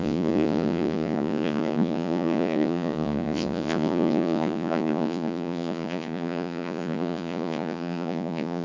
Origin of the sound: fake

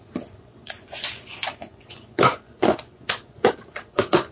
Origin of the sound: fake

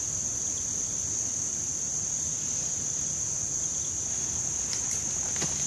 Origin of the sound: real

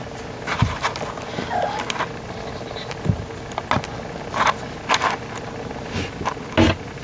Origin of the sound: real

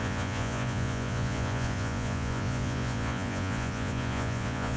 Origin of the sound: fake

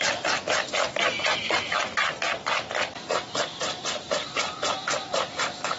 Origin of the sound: real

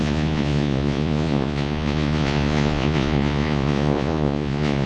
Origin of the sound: fake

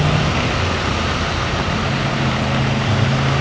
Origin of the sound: real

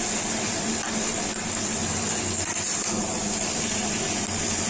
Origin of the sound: real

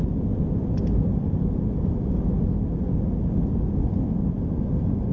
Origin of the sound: real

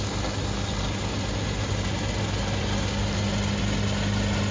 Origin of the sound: real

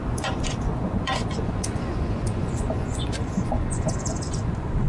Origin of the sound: fake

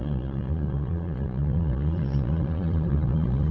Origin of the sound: fake